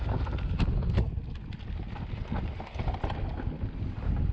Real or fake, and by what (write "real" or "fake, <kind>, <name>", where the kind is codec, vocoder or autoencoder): real